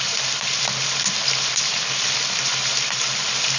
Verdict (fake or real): real